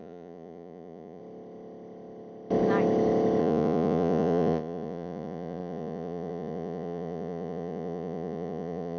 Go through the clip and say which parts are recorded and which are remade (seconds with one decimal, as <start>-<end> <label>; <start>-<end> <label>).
0.0-1.2 remade; 1.2-3.4 recorded; 3.4-9.0 remade